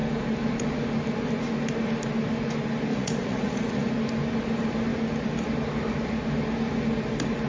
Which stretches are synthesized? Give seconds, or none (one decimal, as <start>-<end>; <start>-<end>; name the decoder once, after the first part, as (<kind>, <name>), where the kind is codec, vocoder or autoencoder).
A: 2.9-3.9 (vocoder, Vocos)